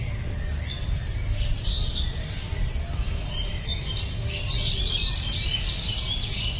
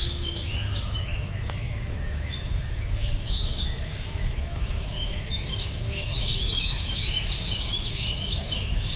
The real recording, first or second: first